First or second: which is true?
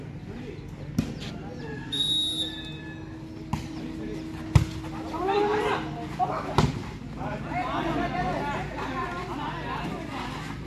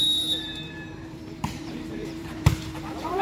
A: first